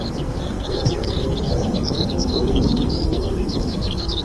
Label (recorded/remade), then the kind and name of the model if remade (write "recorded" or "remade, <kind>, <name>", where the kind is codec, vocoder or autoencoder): remade, codec, SNAC